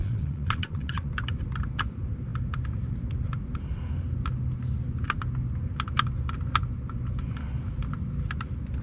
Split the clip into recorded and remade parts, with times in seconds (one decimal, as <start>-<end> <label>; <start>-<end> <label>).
0.0-1.1 remade; 1.1-8.8 recorded